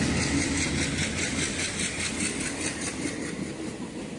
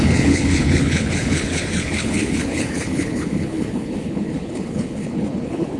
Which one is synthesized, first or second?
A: second